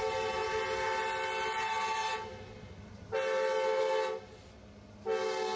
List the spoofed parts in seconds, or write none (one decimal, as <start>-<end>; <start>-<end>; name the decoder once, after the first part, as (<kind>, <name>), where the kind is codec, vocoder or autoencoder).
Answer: none